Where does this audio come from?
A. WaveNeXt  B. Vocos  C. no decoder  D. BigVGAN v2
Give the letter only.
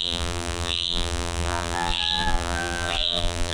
D